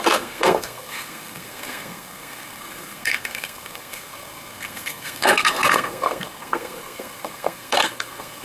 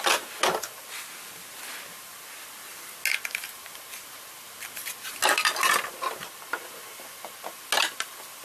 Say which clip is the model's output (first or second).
first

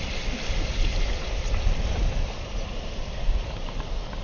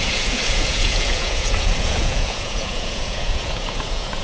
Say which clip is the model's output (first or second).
second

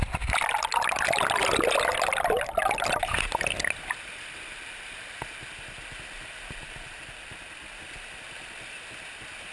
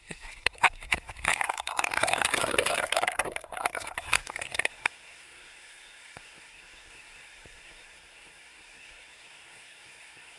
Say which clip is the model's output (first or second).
second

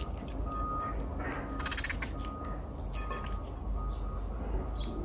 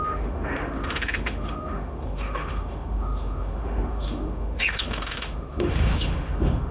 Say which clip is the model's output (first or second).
second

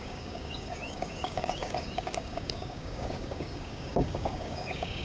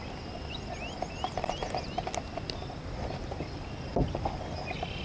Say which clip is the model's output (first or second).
first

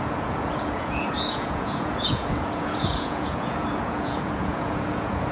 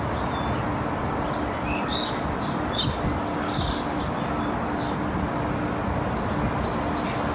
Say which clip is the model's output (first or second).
first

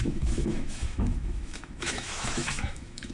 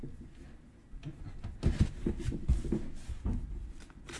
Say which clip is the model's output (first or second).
first